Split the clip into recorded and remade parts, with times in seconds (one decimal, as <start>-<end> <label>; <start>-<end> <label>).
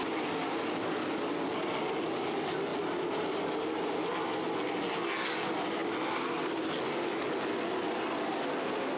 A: 0.0-9.0 recorded